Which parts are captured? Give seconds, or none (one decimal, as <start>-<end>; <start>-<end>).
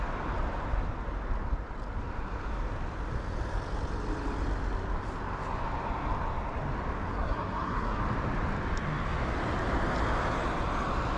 0.0-7.1; 8.0-11.2